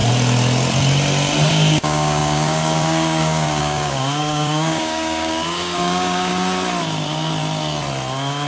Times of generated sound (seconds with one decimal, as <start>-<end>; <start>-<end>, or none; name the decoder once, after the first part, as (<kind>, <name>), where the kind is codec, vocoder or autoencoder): 1.5-6.3 (codec, DAC)